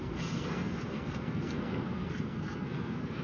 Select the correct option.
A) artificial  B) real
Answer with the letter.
A